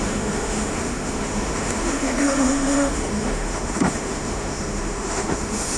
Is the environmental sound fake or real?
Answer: fake